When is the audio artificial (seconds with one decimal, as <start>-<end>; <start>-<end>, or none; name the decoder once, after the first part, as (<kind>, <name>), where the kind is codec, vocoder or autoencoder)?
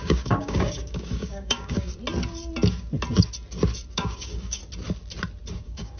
0.0-1.9 (codec, DAC); 3.9-4.6; 5.5-6.0